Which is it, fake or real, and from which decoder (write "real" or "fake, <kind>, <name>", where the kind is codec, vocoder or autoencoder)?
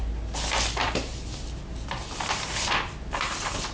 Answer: real